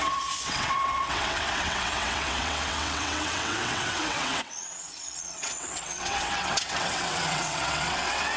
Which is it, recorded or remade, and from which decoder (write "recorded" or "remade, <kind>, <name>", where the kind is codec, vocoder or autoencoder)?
remade, vocoder, WaveNeXt